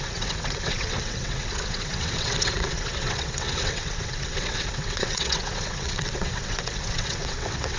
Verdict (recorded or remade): remade